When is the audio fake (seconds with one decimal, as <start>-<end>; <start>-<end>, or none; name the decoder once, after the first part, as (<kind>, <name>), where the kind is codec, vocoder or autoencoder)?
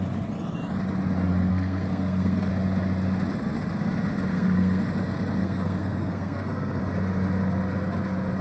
1.5-2.5 (codec, SNAC); 4.3-4.8; 5.4-6.8